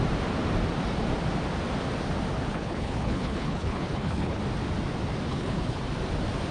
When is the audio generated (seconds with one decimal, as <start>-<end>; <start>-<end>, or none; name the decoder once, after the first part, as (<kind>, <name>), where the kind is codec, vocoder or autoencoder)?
2.5-4.4 (codec, HILCodec); 5.3-5.8